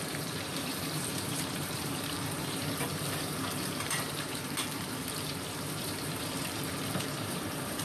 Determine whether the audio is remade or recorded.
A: remade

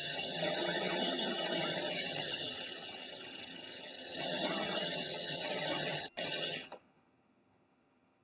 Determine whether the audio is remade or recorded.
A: remade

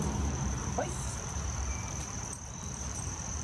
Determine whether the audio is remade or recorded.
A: remade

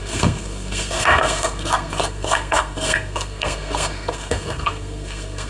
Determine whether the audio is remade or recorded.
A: remade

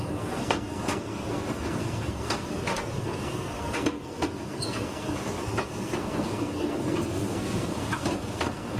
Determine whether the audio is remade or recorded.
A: remade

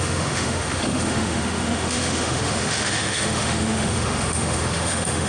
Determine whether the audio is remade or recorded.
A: remade